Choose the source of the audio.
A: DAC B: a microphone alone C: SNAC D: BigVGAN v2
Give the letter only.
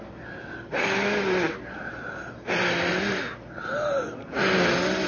B